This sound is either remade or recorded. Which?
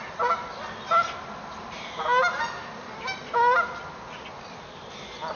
recorded